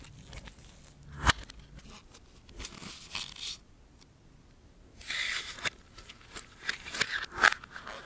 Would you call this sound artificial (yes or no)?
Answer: no